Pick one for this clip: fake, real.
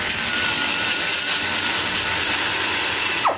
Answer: real